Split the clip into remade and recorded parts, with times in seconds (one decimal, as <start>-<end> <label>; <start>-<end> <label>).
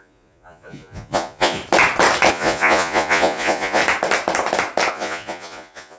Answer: 0.0-1.6 remade; 1.6-2.3 recorded; 2.3-3.8 remade; 3.8-4.9 recorded; 4.9-6.0 remade